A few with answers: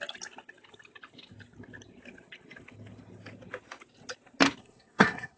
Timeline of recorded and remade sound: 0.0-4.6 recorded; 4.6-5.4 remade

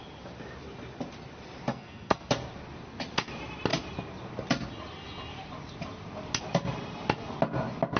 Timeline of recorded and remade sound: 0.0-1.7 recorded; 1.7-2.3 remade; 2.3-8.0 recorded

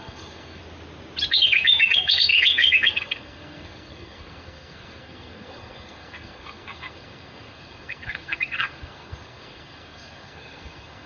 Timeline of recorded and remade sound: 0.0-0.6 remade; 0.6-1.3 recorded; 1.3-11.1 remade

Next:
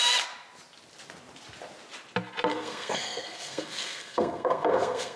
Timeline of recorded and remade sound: 0.0-2.5 recorded; 2.5-5.2 remade